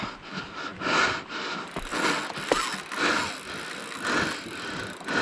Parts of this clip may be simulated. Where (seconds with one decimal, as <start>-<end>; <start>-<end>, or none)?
none